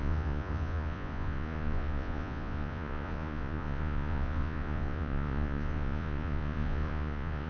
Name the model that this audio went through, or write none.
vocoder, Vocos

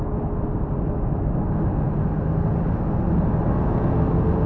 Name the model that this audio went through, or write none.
none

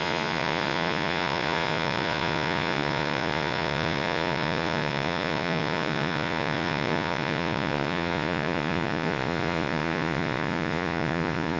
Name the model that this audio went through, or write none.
vocoder, Vocos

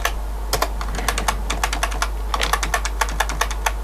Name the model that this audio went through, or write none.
none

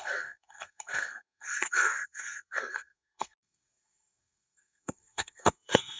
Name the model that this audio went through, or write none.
codec, SNAC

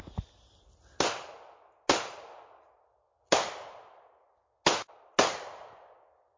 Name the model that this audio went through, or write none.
none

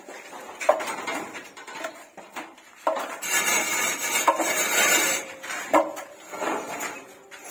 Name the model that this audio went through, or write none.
vocoder, BigVGAN v2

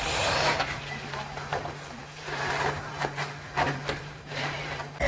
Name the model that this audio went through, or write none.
vocoder, BigVGAN v2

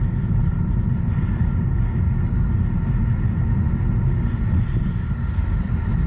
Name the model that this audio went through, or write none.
none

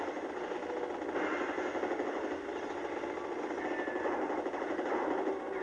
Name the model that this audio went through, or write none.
none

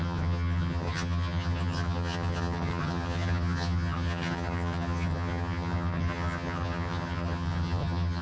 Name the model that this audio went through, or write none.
vocoder, HiFi-GAN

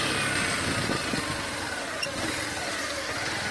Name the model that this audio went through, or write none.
none